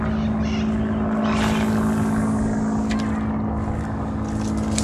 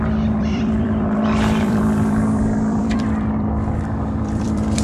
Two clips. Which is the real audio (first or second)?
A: first